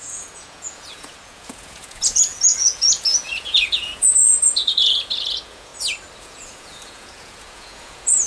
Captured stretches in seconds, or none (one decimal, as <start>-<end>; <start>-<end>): 5.7-6.2